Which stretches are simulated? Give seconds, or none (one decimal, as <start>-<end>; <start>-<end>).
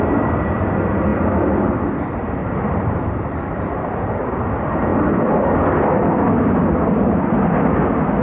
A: 2.4-4.5